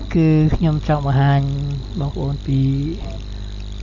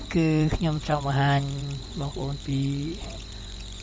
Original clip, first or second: first